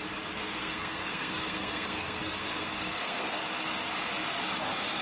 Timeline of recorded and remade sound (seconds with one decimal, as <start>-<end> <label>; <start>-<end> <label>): 0.0-0.4 recorded; 0.4-3.4 remade; 3.4-5.0 recorded